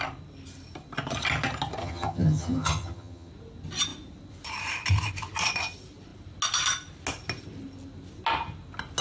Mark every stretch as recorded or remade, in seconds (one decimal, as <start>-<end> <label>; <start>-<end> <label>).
0.0-1.8 recorded; 1.8-3.3 remade; 3.3-9.0 recorded